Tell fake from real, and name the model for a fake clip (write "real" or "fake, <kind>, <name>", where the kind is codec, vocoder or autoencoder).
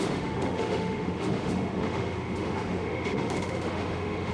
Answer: fake, autoencoder, DAC-VAE